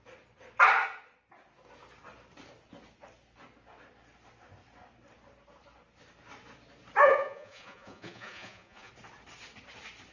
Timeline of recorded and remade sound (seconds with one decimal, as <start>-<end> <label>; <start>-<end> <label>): 0.0-7.0 recorded; 7.0-8.9 remade; 8.9-10.1 recorded